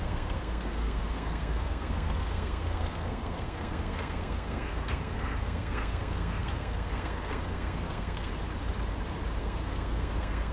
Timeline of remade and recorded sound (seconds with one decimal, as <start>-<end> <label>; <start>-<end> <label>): 0.0-8.3 remade; 8.3-9.4 recorded; 9.4-10.5 remade